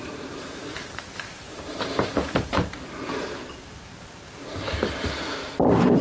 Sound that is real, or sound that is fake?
fake